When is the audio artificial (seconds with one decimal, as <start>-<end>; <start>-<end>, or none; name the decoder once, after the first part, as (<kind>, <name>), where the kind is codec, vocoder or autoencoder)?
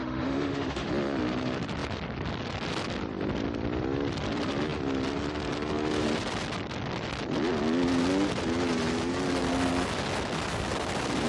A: 0.0-0.9 (autoencoder, DAC-VAE)